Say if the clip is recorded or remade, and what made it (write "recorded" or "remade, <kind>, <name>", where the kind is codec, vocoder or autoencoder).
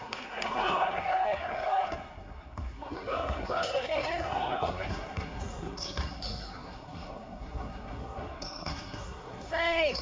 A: remade, codec, SNAC